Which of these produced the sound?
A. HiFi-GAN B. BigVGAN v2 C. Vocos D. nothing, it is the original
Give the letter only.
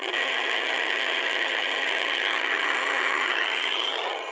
A